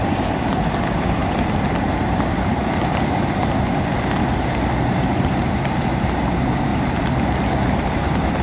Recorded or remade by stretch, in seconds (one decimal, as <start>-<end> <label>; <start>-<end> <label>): 0.0-1.2 remade; 1.2-1.8 recorded; 1.8-6.7 remade; 6.7-7.5 recorded; 7.5-8.4 remade